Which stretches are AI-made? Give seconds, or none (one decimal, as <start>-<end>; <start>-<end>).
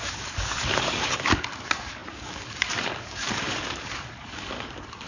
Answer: 0.0-5.1